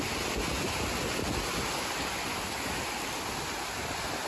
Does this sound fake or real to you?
real